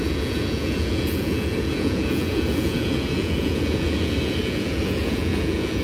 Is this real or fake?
fake